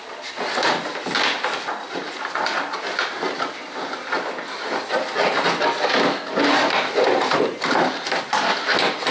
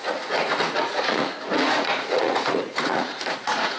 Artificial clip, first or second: second